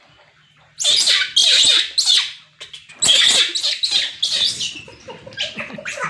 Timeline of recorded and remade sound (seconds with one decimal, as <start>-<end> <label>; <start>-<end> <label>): 0.0-6.1 recorded